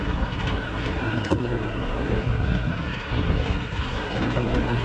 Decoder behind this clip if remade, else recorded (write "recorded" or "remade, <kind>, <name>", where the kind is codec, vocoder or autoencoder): remade, codec, SNAC